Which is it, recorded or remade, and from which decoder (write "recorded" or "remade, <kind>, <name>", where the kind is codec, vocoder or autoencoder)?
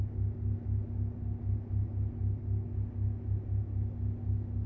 recorded